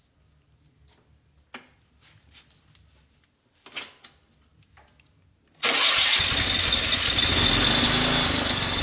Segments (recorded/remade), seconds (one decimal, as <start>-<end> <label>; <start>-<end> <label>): 0.0-8.8 recorded